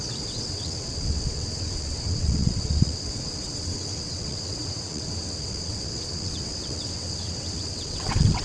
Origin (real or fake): fake